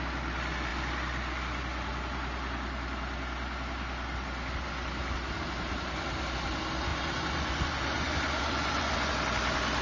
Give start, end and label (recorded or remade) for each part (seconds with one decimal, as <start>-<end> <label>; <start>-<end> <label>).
0.0-6.9 recorded; 6.9-9.1 remade; 9.1-9.8 recorded